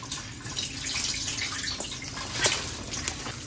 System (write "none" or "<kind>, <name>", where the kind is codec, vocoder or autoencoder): none